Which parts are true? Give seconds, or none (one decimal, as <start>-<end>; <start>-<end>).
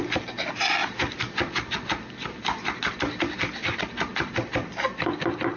0.0-5.6